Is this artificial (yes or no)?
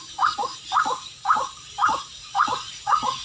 yes